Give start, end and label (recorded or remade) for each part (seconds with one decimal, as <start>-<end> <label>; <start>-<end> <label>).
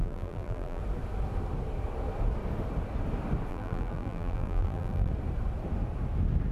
0.0-0.8 remade; 0.8-3.5 recorded; 3.5-5.1 remade; 5.1-6.5 recorded